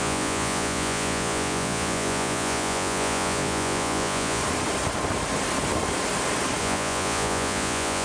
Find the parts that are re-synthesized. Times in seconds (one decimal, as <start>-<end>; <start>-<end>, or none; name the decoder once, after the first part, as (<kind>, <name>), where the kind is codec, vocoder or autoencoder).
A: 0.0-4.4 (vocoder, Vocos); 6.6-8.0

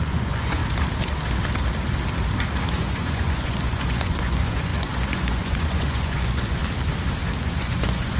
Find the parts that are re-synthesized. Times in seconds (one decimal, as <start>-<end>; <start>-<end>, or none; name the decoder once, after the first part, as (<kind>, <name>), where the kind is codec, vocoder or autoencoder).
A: 0.0-0.6 (vocoder, Vocos); 2.7-6.6; 7.4-8.2

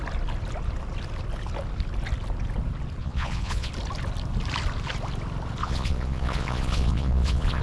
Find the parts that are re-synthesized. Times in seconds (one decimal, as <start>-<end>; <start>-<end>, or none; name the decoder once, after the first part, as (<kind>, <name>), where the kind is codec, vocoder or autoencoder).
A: 3.0-3.7 (vocoder, Vocos); 5.6-7.6

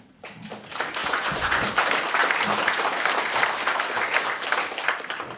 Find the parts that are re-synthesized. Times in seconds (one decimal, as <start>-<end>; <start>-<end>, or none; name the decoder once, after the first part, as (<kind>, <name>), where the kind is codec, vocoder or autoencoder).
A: 1.0-1.6 (vocoder, Vocos)

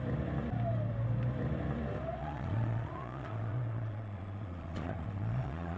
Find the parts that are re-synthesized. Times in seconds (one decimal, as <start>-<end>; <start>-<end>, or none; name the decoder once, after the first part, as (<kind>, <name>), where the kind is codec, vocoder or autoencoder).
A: 2.2-5.8 (vocoder, Vocos)